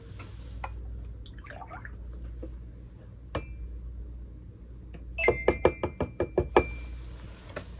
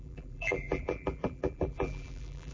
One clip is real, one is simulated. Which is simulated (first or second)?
second